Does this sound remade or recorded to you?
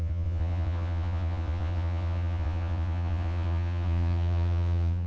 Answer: remade